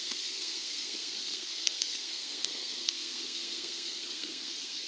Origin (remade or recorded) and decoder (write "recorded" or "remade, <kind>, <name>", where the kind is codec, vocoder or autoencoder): remade, codec, SNAC